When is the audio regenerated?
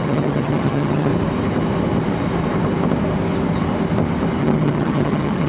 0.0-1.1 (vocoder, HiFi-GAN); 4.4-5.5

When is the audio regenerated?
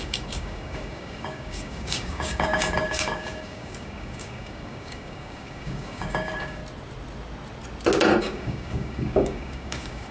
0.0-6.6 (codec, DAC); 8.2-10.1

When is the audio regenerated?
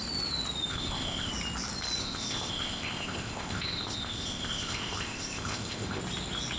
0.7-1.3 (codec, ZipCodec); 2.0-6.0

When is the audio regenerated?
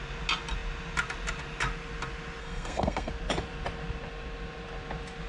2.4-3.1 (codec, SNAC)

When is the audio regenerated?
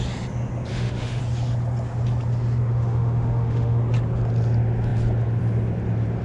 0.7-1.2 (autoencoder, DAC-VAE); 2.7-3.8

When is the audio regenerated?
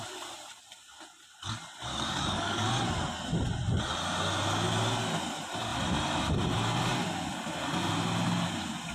1.9-2.7 (codec, DAC)